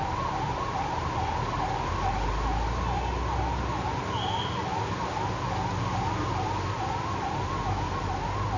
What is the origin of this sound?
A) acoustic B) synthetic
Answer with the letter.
A